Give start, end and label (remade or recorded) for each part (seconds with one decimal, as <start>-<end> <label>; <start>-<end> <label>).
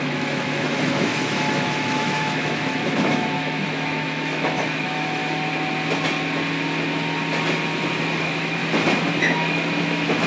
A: 0.0-5.2 remade; 5.2-8.2 recorded; 8.2-8.6 remade; 8.6-9.2 recorded; 9.2-10.3 remade